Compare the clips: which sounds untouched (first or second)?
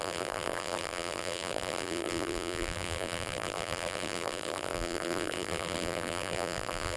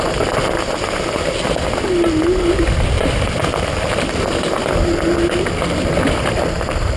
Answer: second